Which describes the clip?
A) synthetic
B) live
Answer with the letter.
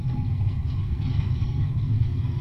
A